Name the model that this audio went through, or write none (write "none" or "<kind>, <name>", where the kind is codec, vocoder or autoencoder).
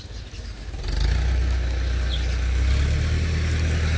none